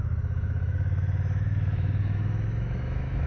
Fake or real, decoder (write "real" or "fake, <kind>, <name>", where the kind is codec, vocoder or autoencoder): fake, autoencoder, DAC-VAE